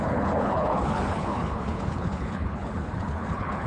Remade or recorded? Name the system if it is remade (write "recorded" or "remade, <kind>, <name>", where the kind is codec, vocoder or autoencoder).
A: remade, codec, HILCodec